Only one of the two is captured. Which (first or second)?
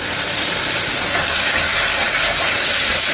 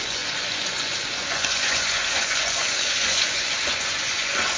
first